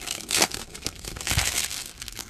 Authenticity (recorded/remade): remade